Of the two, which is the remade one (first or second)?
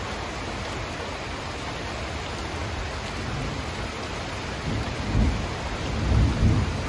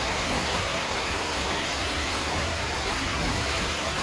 second